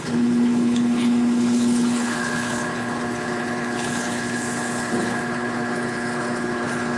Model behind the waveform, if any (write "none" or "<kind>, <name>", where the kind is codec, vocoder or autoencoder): codec, HILCodec